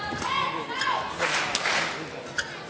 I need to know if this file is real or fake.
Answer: real